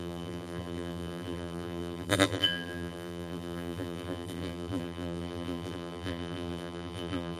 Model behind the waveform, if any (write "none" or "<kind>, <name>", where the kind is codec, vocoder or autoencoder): vocoder, BigVGAN v2